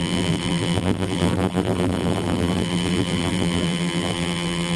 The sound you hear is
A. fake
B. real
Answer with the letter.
A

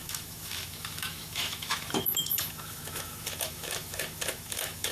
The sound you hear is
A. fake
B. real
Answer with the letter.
A